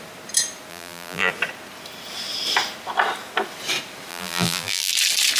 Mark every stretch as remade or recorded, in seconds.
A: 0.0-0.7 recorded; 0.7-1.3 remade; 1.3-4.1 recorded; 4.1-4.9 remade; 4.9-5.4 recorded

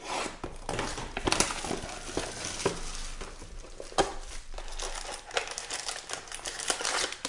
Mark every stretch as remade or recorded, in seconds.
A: 0.0-0.9 recorded; 0.9-1.4 remade; 1.4-4.1 recorded; 4.1-4.7 remade; 4.7-7.3 recorded

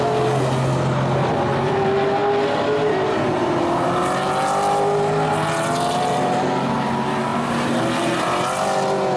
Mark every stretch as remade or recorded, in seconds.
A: 0.0-7.3 recorded; 7.3-7.8 remade; 7.8-9.2 recorded

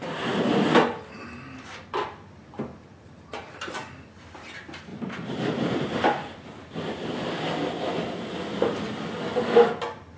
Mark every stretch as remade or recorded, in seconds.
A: 0.0-2.7 recorded; 2.7-3.7 remade; 3.7-4.9 recorded; 4.9-6.6 remade; 6.6-8.5 recorded; 8.5-9.1 remade; 9.1-10.2 recorded

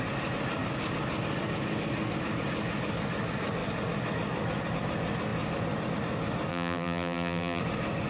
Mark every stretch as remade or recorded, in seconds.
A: 0.0-6.5 recorded; 6.5-7.6 remade; 7.6-8.1 recorded